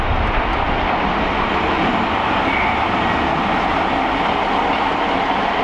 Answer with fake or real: real